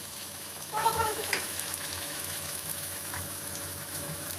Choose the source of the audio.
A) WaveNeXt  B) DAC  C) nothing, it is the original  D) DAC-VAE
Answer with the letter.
D